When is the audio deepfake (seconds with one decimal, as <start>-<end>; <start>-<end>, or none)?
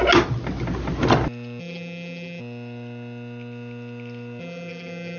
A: 1.6-2.4; 4.4-5.2